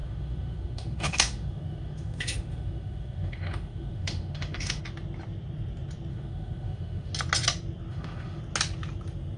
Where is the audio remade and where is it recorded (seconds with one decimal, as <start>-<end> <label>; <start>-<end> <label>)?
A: 0.0-4.8 remade; 4.8-6.1 recorded; 6.1-7.1 remade; 7.1-7.9 recorded; 7.9-8.4 remade; 8.4-9.4 recorded